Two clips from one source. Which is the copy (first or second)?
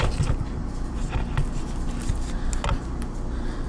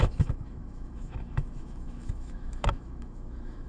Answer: second